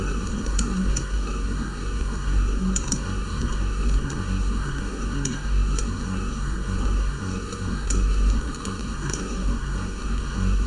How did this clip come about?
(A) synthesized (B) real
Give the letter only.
A